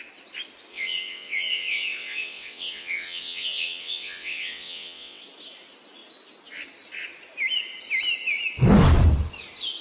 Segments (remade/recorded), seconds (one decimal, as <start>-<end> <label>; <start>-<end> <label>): 0.0-0.7 recorded; 0.7-5.2 remade; 5.2-9.8 recorded